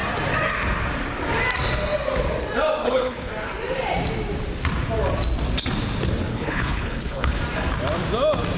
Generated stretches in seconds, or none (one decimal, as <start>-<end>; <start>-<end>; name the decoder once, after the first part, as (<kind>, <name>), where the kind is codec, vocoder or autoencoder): 2.8-3.3 (codec, HILCodec); 6.3-7.4